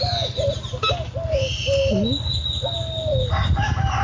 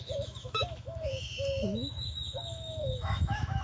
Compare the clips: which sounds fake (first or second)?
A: second